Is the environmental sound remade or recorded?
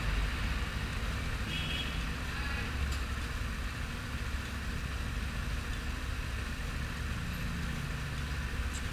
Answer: recorded